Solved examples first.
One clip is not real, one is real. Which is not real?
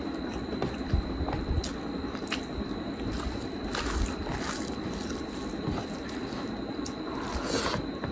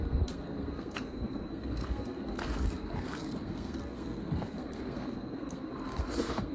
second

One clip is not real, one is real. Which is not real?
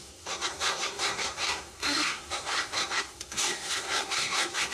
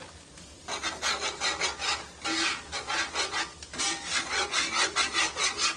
first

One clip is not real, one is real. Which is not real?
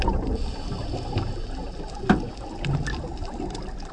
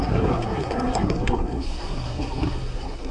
second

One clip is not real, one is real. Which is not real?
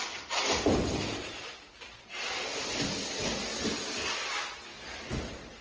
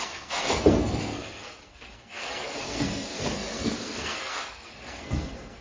second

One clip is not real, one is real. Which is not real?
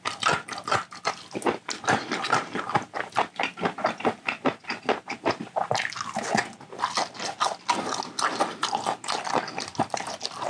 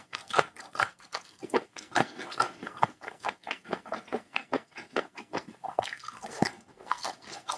second